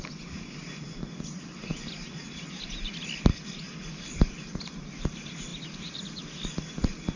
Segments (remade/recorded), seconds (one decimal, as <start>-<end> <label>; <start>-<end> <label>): 0.0-7.2 recorded